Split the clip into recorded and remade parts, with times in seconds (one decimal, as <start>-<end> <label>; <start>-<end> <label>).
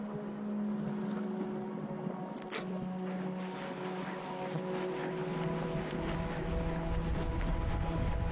0.0-8.3 recorded